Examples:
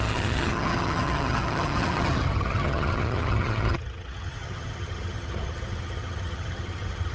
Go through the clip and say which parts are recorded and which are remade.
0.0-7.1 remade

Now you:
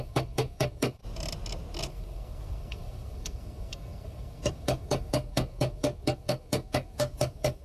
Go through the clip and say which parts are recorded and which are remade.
0.0-1.0 remade; 1.0-1.9 recorded; 1.9-7.6 remade

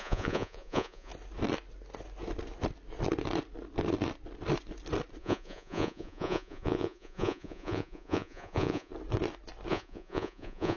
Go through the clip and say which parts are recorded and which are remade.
0.0-1.1 remade; 1.1-5.2 recorded; 5.2-8.9 remade; 8.9-9.7 recorded; 9.7-10.8 remade

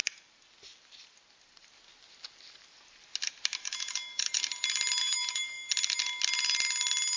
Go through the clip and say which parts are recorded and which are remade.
0.0-3.6 recorded; 3.6-4.4 remade; 4.4-5.0 recorded; 5.0-5.7 remade; 5.7-7.2 recorded